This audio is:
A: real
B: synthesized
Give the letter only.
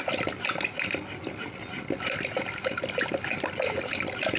A